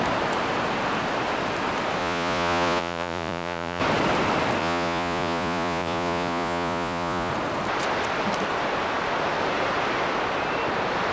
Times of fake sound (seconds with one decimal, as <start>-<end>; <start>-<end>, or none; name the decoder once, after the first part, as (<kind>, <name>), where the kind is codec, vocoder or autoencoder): 2.0-3.8 (vocoder, Vocos); 4.6-7.3